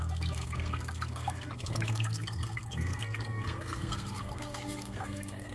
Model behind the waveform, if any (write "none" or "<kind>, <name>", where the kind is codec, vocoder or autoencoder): codec, SNAC